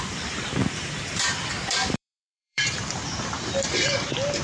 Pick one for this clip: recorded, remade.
remade